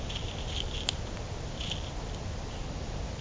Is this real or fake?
real